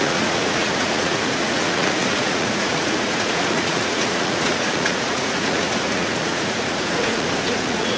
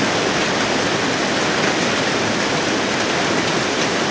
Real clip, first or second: second